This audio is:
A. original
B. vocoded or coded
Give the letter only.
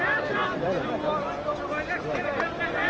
A